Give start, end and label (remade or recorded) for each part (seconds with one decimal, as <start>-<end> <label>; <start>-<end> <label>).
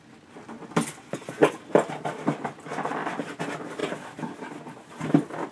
0.0-5.5 recorded